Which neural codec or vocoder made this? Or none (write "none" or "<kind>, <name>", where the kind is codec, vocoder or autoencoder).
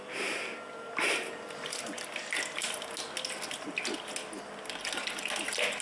none